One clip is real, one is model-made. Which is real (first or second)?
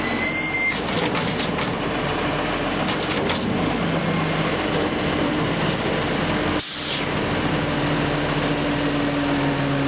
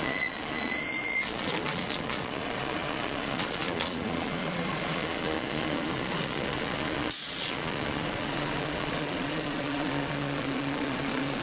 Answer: first